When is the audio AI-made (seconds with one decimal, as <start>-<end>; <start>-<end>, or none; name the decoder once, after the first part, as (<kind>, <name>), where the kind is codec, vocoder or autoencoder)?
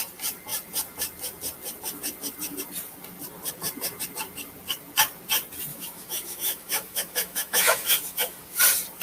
5.7-8.6 (autoencoder, DAC-VAE)